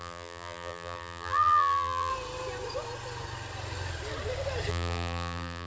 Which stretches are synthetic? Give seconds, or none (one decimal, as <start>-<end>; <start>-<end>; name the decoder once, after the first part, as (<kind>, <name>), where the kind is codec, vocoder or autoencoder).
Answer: 0.0-2.1 (vocoder, BigVGAN v2); 4.7-5.7